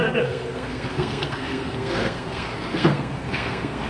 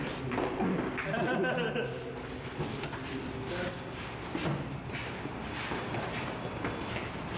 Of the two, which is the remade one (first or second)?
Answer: first